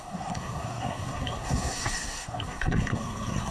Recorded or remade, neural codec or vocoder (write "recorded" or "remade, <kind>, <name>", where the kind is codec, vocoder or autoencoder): remade, codec, SNAC